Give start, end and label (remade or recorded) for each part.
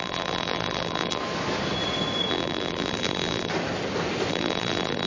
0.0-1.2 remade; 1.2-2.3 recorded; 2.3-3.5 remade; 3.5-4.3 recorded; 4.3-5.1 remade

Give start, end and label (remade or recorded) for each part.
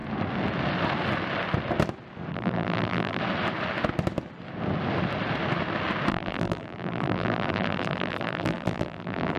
0.0-2.3 recorded; 2.3-3.2 remade; 3.2-6.1 recorded; 6.1-9.4 remade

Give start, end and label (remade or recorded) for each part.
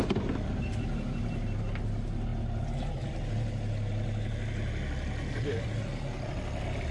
0.0-6.9 recorded